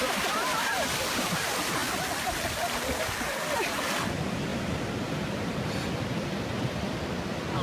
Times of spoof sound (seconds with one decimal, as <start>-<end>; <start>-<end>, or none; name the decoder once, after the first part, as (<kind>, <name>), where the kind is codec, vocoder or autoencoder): none